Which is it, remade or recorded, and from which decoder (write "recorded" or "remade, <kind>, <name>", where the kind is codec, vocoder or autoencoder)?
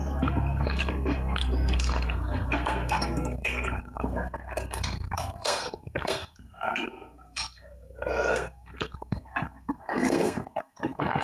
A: remade, codec, SNAC